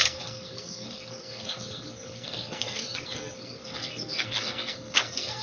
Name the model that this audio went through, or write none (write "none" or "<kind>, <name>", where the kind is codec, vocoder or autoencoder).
codec, SNAC